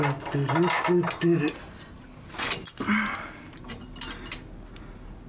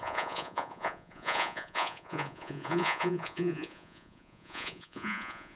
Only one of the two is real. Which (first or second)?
first